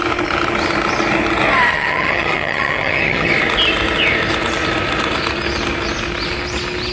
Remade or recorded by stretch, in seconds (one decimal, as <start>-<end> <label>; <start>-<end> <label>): 0.0-1.7 recorded; 1.7-3.3 remade; 3.3-6.9 recorded